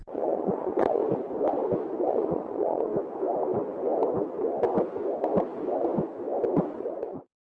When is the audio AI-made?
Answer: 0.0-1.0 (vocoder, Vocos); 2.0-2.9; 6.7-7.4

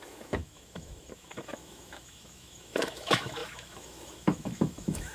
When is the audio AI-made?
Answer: 0.0-5.1 (autoencoder, DAC-VAE)

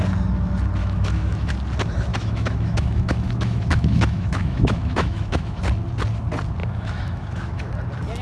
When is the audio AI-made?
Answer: 0.8-1.5 (autoencoder, DAC-VAE); 2.1-5.6; 6.6-7.7

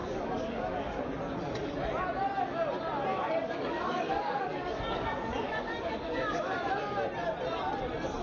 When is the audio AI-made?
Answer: 0.0-1.0 (codec, DAC); 3.1-6.7

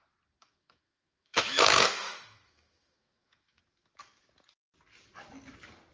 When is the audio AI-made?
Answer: 0.4-3.6 (autoencoder, DAC-VAE)

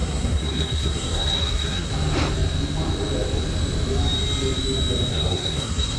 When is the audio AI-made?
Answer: 0.0-1.9 (codec, SNAC); 5.1-6.0